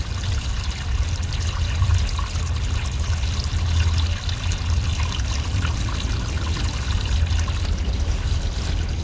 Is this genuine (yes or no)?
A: yes